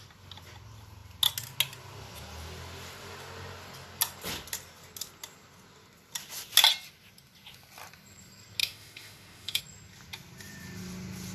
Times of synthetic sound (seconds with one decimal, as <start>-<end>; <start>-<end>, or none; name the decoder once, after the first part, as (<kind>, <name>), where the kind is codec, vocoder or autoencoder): 8.6-9.6 (autoencoder, DAC-VAE)